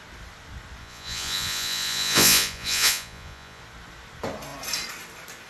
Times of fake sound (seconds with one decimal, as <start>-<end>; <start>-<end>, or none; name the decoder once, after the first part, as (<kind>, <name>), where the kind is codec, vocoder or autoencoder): 0.8-3.6 (vocoder, Vocos)